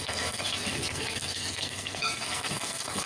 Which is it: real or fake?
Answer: fake